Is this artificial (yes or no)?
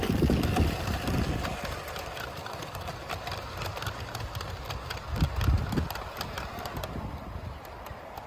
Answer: no